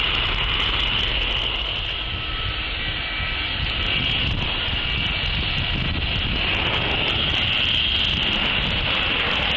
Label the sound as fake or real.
real